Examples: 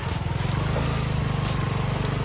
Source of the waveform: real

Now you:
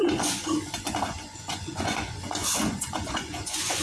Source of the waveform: fake